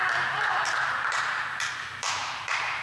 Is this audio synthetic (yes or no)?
yes